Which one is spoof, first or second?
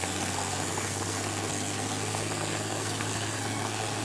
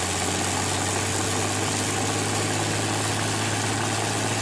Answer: first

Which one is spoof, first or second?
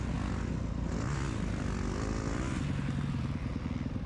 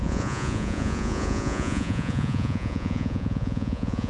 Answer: second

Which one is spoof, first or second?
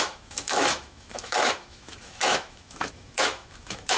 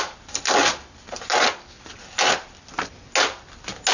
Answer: first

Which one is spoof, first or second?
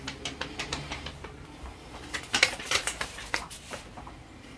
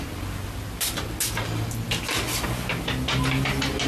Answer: first